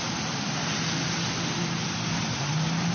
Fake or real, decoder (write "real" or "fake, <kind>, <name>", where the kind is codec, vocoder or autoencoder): real